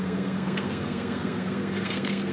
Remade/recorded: remade